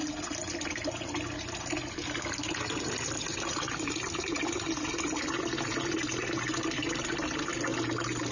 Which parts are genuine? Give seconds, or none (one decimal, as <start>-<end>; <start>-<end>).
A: 0.0-8.3